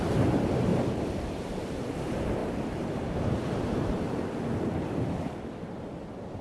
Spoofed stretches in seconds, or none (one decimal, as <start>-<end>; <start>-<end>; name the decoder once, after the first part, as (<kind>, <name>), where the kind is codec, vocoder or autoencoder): 0.7-1.8 (vocoder, BigVGAN v2); 2.4-3.1